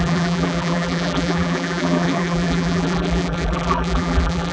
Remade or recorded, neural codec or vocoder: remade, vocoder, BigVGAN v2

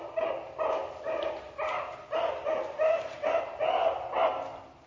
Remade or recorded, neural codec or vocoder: recorded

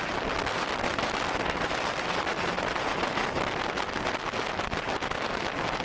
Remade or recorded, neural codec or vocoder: recorded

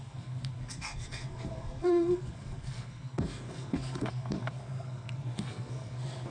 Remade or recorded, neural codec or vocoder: remade, codec, SNAC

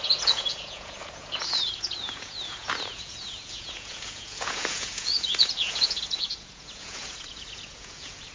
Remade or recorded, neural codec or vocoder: remade, vocoder, Vocos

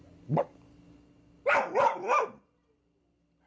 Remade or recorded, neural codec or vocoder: recorded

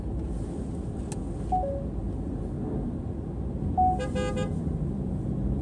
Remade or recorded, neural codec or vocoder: recorded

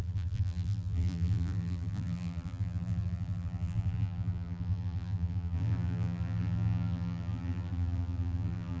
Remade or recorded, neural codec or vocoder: remade, vocoder, BigVGAN v2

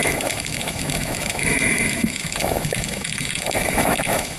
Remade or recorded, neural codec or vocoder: remade, autoencoder, DAC-VAE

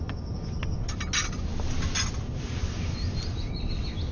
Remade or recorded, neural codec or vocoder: recorded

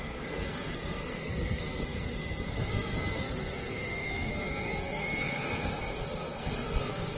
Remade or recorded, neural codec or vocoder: remade, codec, SNAC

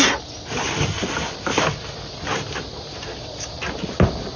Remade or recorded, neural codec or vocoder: recorded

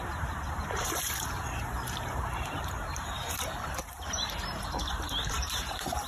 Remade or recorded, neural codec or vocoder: remade, vocoder, BigVGAN v2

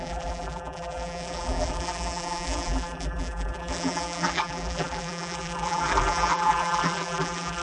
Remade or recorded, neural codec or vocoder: remade, vocoder, BigVGAN v2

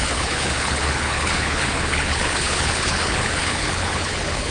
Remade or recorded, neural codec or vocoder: remade, codec, HILCodec